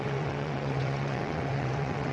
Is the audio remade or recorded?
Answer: remade